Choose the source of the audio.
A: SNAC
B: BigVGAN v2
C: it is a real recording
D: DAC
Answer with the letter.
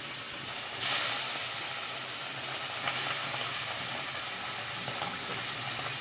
C